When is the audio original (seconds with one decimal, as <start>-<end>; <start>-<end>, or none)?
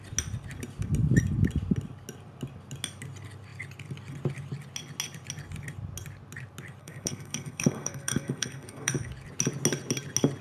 0.0-6.8; 9.1-10.4